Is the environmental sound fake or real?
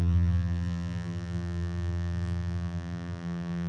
fake